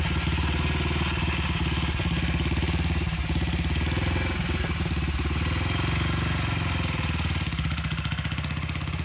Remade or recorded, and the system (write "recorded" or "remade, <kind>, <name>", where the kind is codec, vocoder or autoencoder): recorded